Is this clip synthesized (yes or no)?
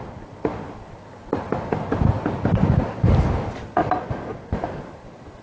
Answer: no